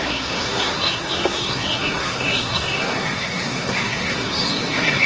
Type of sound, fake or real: fake